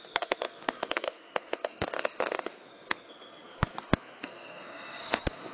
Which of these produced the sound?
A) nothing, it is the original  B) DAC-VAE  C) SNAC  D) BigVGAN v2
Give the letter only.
C